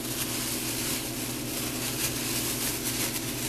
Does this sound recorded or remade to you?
recorded